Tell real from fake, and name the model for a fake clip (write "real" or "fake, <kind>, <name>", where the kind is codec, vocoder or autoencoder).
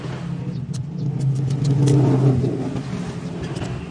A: real